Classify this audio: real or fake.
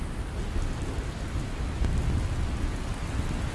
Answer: real